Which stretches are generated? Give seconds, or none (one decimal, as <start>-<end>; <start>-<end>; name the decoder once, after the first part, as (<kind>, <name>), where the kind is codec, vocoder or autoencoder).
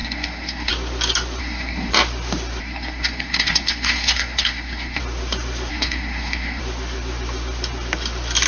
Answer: 0.0-0.7 (codec, SNAC); 1.4-1.9; 2.6-5.0; 5.7-6.6